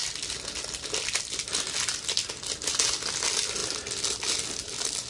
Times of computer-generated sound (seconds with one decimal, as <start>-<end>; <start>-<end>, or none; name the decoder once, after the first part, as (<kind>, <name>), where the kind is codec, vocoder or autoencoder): none

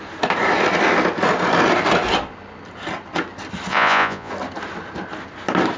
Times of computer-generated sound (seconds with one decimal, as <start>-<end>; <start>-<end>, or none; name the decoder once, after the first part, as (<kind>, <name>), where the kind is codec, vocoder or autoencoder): 3.7-4.3 (vocoder, Vocos)

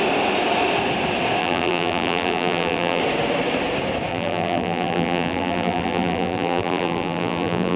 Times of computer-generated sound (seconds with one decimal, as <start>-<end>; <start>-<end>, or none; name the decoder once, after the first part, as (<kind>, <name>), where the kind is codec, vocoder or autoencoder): 1.4-3.0 (vocoder, BigVGAN v2); 4.1-7.8

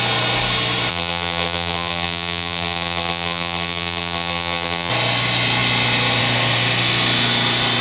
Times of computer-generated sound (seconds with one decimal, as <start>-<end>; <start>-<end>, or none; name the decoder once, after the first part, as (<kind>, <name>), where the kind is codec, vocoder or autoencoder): 0.9-4.9 (vocoder, BigVGAN v2)

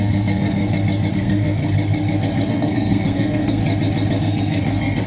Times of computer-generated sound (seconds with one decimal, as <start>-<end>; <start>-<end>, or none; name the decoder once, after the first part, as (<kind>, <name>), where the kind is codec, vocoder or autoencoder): 0.0-0.6 (codec, SNAC); 1.1-1.6; 2.5-3.6; 4.2-5.1

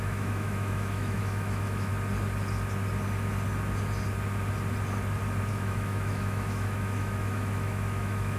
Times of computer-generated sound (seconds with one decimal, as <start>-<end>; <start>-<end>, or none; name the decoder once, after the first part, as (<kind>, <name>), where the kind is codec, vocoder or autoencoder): 0.0-1.9 (autoencoder, DAC-VAE); 5.5-8.4